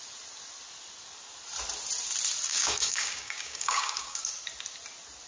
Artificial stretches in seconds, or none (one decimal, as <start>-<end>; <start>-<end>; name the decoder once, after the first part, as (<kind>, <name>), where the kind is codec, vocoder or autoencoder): 2.5-4.3 (codec, DAC)